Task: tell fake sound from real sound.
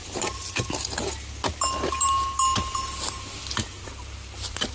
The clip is real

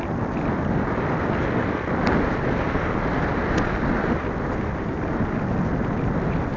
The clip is real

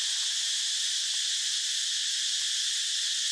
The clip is real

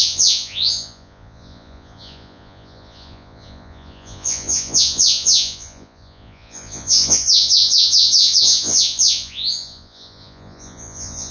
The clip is fake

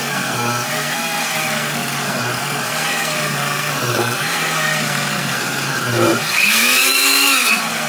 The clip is fake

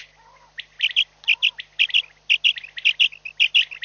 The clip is real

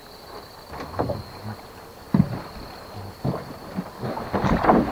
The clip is real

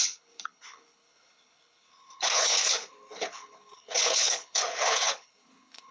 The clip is fake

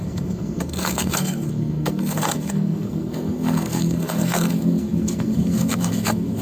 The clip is fake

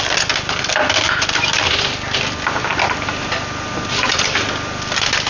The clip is real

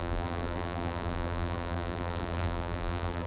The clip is fake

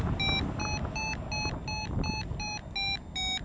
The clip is real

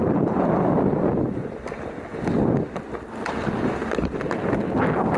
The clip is real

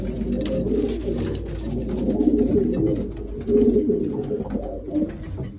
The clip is real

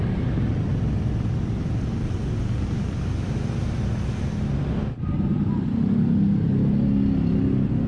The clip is real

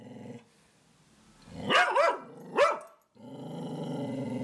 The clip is real